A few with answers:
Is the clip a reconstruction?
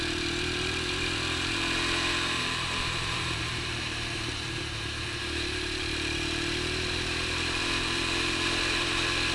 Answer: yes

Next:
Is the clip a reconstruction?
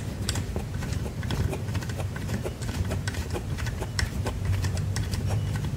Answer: yes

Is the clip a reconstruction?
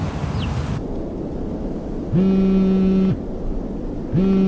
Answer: no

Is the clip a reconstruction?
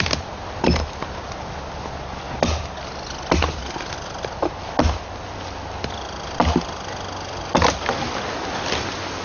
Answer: no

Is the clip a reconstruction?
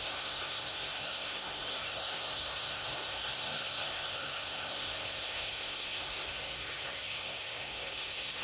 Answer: yes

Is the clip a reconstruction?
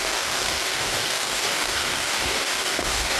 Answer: yes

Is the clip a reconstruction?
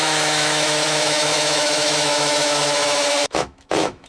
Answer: yes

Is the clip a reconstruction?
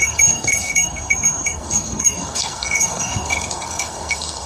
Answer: yes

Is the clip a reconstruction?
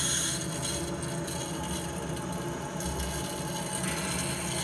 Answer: no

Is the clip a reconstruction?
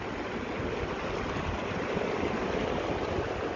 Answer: no